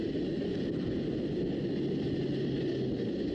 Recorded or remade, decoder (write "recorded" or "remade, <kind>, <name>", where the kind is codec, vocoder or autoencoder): recorded